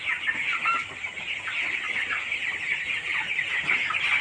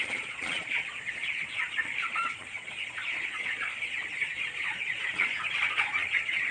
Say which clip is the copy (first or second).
second